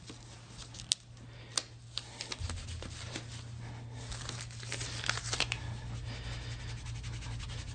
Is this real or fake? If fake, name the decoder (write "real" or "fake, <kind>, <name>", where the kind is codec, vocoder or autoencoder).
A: real